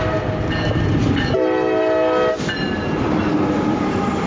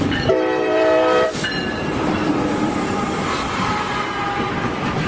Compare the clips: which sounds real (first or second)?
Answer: first